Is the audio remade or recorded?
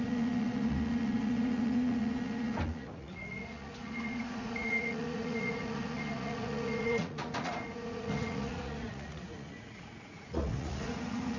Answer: remade